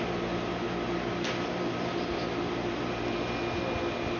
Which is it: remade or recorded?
recorded